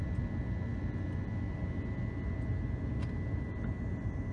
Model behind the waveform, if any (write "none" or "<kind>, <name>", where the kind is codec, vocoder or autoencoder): none